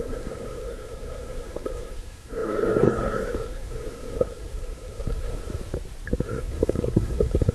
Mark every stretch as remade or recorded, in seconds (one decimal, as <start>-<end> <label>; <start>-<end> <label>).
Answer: 0.0-5.4 remade; 5.4-6.3 recorded; 6.3-7.5 remade